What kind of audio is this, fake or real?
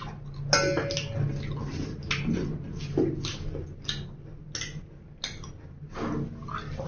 real